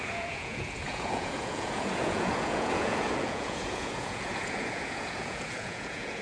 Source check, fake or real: fake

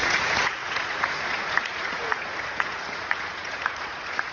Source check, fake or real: fake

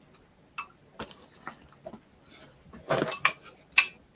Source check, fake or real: real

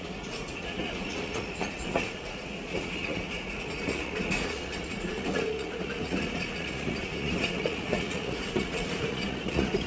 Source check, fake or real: fake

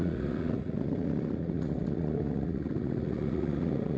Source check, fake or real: fake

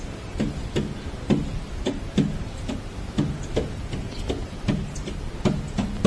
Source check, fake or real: real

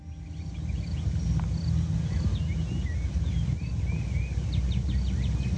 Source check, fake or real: real